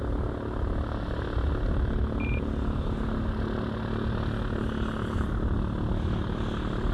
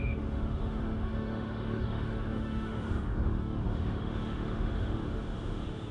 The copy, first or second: second